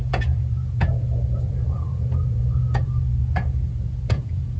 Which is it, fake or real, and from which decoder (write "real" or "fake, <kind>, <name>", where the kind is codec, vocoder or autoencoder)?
fake, vocoder, Vocos